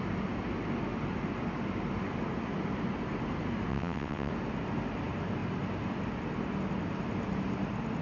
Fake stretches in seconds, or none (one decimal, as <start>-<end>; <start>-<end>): 3.7-4.3